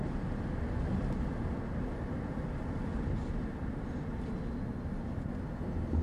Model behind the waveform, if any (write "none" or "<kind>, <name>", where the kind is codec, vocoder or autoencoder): none